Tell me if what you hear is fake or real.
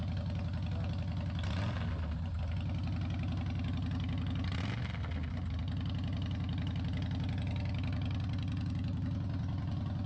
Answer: real